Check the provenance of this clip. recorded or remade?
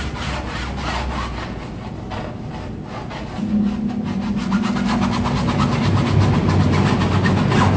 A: recorded